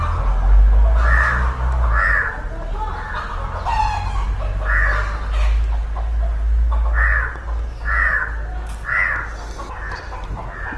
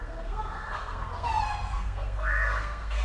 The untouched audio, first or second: first